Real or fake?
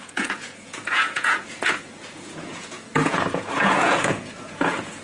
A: fake